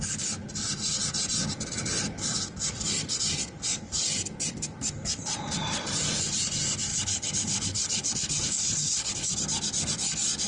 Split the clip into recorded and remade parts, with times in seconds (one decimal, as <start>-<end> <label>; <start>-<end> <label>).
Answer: 0.0-6.9 recorded; 6.9-9.3 remade; 9.3-10.5 recorded